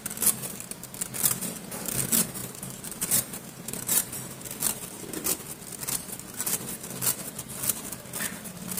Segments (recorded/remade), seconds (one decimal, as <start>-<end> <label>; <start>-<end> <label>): 0.0-2.4 recorded; 2.4-4.1 remade; 4.1-8.8 recorded